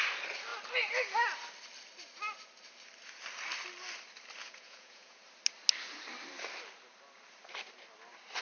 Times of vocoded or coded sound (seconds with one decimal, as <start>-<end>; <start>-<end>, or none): 4.4-5.2